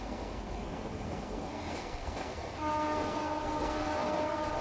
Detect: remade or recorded remade